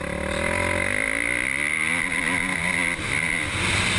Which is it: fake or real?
real